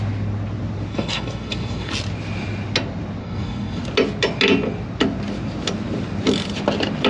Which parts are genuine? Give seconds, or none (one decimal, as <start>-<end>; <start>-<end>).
0.0-0.9; 1.9-3.2; 3.8-7.1

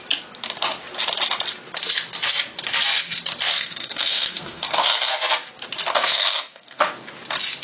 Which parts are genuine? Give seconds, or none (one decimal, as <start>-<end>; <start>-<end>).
0.0-3.5; 5.1-5.9; 6.8-7.6

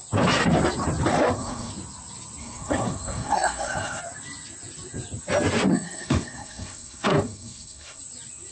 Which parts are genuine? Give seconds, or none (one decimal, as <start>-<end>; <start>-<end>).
0.0-1.1; 1.7-2.4; 4.0-5.7; 8.0-8.5

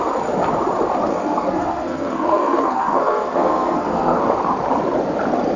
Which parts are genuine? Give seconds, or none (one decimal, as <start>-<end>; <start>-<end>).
0.0-1.1; 4.2-5.6

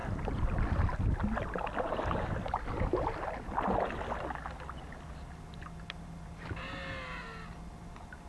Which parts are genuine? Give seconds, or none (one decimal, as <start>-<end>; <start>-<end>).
0.0-8.3